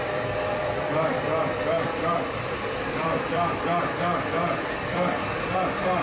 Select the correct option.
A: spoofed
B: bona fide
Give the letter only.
A